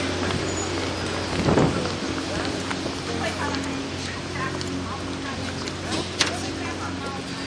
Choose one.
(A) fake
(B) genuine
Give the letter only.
B